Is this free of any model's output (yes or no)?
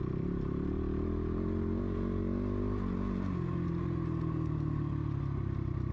yes